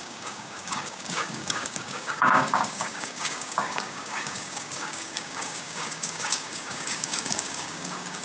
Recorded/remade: remade